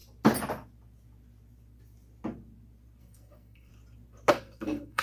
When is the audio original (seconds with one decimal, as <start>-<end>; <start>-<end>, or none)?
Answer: 0.0-3.0; 3.7-4.3